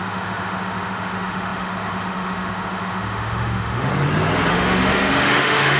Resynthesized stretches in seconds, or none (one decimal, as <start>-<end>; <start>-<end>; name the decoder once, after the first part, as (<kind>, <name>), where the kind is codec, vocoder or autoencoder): 0.0-3.9 (autoencoder, DAC-VAE); 4.5-5.8